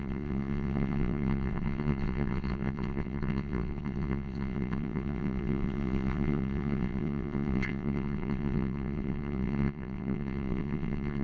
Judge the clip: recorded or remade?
remade